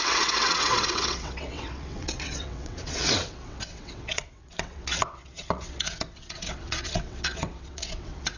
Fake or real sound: fake